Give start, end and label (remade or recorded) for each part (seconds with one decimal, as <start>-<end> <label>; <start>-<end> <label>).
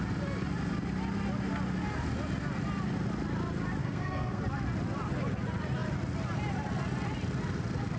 0.0-3.8 recorded; 3.8-4.4 remade; 4.4-8.0 recorded